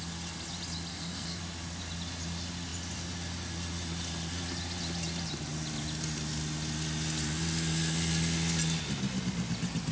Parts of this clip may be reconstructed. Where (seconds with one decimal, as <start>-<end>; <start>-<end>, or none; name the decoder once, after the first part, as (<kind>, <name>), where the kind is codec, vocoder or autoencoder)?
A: 0.9-1.4 (codec, SNAC)